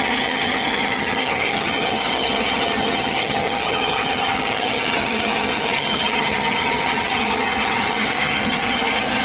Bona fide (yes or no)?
no